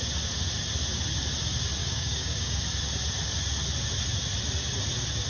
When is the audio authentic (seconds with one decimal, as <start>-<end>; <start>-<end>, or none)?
0.0-1.8; 2.6-5.3